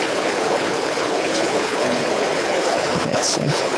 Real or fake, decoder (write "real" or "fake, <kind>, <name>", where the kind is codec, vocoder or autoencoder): fake, codec, HILCodec